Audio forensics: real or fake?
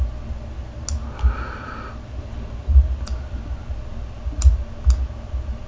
real